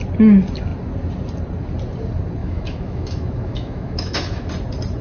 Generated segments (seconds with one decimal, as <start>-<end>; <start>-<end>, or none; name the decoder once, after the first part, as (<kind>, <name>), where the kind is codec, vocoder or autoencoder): 2.4-4.5 (autoencoder, DAC-VAE)